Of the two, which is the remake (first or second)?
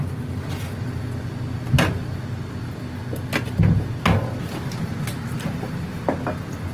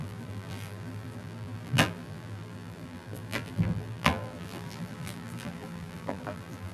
second